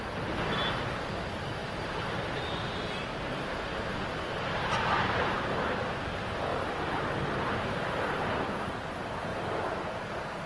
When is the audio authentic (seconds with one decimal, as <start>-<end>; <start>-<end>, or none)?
0.0-1.6; 3.6-6.5; 7.1-9.3